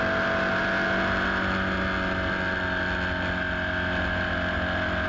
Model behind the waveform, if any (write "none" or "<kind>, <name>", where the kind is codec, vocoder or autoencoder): none